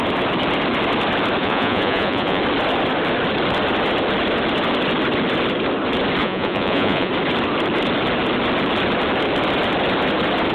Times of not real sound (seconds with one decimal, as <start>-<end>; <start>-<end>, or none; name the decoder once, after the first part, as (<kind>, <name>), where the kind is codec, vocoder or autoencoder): 1.4-2.4 (vocoder, Vocos); 6.2-7.1